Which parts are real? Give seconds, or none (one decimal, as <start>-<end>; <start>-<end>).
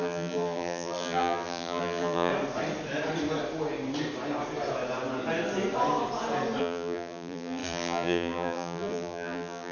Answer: 2.3-6.6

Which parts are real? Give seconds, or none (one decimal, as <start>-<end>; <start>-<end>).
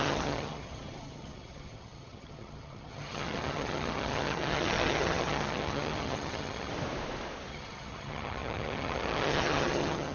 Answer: 6.7-7.5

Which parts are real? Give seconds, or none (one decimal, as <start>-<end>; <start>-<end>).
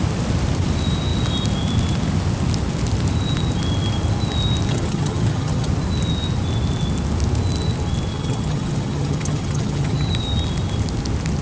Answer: 0.0-4.7; 5.7-8.1; 10.1-11.4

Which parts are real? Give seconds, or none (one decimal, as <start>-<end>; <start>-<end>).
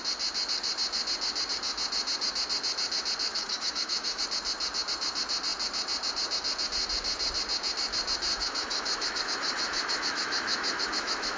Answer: 0.0-3.3; 4.2-8.3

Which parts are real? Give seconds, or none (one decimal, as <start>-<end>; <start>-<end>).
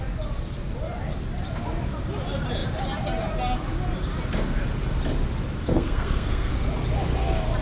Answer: 0.0-5.7; 6.5-7.6